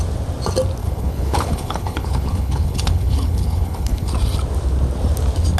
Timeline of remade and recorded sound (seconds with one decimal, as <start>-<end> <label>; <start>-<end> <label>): 0.0-0.8 recorded; 0.8-4.1 remade; 4.1-5.6 recorded